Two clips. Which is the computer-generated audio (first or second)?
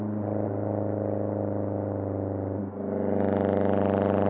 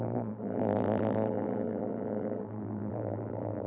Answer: second